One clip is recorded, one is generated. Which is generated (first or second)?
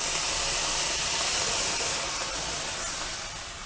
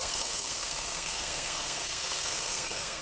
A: second